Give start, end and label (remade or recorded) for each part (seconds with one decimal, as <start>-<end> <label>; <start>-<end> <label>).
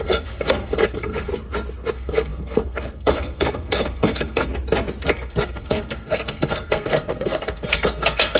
0.0-1.3 remade; 1.3-1.9 recorded; 1.9-4.5 remade; 4.5-5.1 recorded; 5.1-8.4 remade